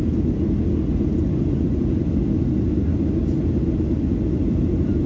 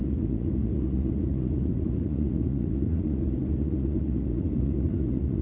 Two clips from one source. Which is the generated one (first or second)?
second